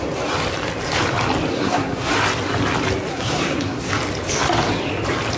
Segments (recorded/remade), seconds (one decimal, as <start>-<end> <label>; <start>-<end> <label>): 0.0-1.5 recorded; 1.5-2.1 remade; 2.1-3.1 recorded; 3.1-3.9 remade; 3.9-5.4 recorded